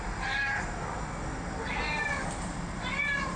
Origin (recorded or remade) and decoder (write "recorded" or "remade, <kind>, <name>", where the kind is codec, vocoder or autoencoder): recorded